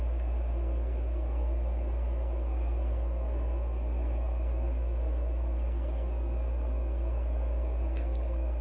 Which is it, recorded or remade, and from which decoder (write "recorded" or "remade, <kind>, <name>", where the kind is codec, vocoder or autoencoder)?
remade, codec, SNAC